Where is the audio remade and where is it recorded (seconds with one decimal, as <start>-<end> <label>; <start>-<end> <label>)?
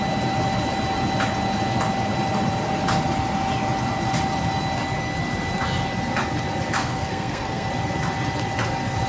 0.0-6.8 recorded; 6.8-7.7 remade; 7.7-9.1 recorded